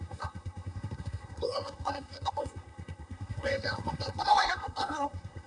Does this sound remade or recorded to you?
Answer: remade